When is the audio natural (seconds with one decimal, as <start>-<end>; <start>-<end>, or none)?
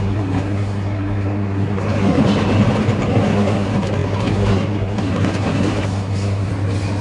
2.2-3.1; 6.5-7.0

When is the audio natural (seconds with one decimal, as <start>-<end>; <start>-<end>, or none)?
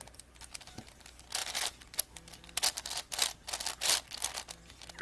0.0-5.0